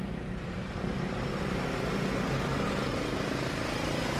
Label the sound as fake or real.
fake